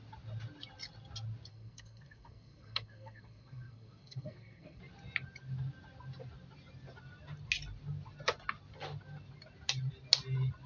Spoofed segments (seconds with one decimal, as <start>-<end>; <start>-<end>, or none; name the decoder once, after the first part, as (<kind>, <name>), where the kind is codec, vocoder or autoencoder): 1.5-4.8 (codec, SNAC)